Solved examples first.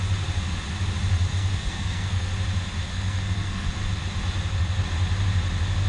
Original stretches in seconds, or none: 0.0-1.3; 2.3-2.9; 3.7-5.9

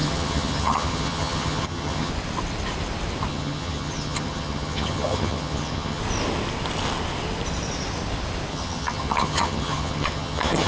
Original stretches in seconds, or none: 2.1-3.3; 6.0-8.5